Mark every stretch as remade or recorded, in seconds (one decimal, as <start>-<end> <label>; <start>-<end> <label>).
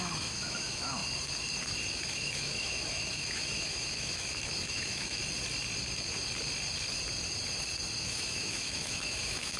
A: 0.0-1.0 remade; 1.0-1.9 recorded; 1.9-5.2 remade; 5.2-8.0 recorded; 8.0-9.6 remade